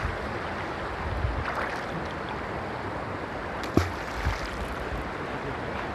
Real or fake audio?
real